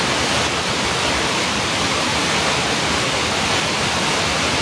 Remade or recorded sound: recorded